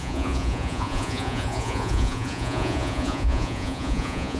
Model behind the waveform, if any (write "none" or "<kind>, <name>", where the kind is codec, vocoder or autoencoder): vocoder, Vocos